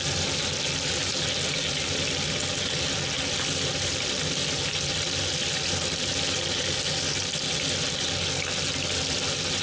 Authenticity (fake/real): real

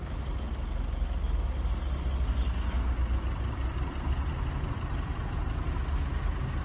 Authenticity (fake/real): real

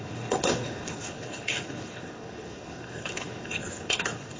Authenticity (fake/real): fake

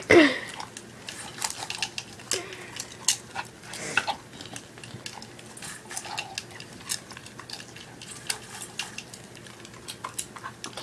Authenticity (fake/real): real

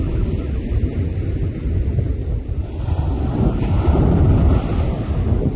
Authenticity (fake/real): real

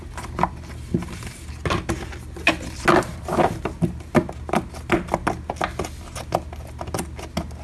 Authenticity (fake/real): real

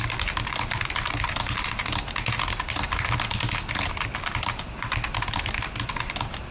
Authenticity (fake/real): real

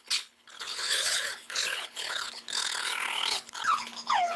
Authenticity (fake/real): fake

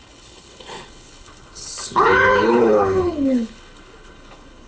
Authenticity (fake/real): fake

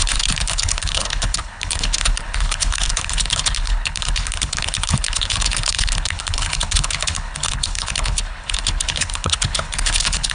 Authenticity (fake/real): fake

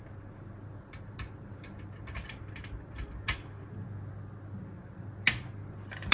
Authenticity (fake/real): real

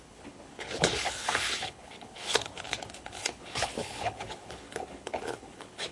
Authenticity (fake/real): fake